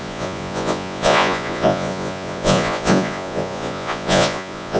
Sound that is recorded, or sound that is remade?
remade